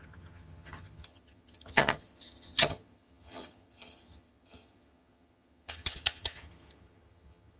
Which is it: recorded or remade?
remade